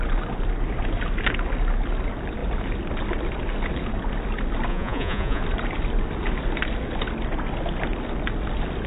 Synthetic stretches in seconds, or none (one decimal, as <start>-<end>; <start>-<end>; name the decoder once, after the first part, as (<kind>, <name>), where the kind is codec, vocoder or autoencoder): 4.7-5.4 (vocoder, Vocos)

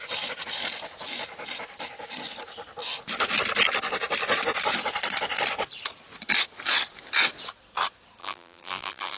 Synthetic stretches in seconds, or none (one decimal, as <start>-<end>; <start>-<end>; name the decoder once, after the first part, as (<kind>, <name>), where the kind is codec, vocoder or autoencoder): 8.2-9.2 (vocoder, BigVGAN v2)

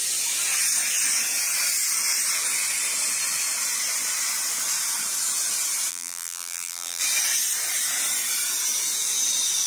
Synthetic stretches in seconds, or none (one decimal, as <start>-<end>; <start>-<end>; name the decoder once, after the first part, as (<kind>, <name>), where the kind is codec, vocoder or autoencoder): 5.9-7.0 (vocoder, BigVGAN v2)

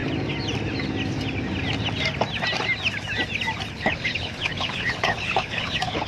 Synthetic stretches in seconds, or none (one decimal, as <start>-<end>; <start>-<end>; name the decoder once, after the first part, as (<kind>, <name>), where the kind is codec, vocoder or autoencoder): 3.7-6.1 (codec, HILCodec)

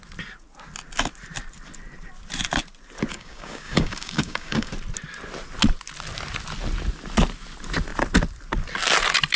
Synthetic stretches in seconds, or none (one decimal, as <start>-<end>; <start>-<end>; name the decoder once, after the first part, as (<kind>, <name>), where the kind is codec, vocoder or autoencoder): 3.1-4.7 (codec, DAC)